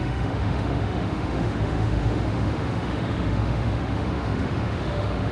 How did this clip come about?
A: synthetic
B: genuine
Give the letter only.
A